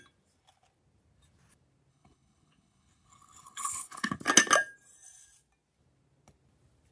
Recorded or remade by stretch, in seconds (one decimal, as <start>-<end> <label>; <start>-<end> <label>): 0.0-1.9 recorded; 1.9-4.2 remade; 4.2-6.9 recorded